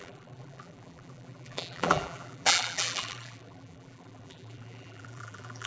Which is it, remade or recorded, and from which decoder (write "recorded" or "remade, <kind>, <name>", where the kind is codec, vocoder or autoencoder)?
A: remade, vocoder, BigVGAN v2